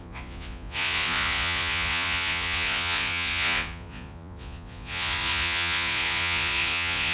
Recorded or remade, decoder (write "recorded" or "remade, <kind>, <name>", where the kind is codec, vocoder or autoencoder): remade, vocoder, Vocos